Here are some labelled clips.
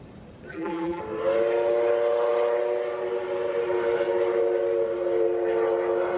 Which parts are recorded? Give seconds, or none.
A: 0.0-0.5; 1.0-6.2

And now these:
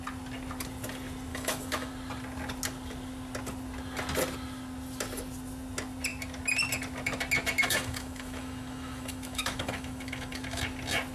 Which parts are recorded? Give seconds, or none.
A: 0.0-1.3; 1.9-7.6; 10.6-11.1